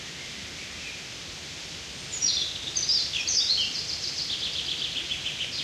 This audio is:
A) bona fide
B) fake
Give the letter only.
A